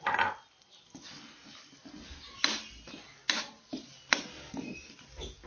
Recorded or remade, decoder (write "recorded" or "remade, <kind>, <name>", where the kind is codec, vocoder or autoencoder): recorded